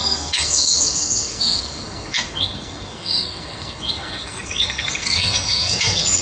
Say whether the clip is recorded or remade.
remade